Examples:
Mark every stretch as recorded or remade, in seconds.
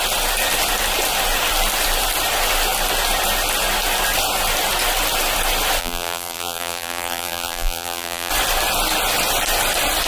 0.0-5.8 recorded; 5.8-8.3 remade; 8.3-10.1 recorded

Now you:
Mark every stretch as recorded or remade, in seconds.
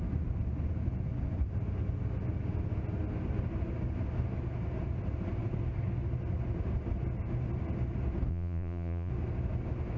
0.0-8.3 recorded; 8.3-9.1 remade; 9.1-10.0 recorded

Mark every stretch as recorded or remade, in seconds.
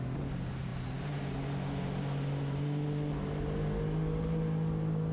0.0-5.1 recorded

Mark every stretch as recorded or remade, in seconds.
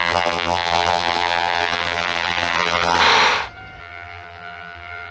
0.0-3.0 remade; 3.0-3.8 recorded; 3.8-5.1 remade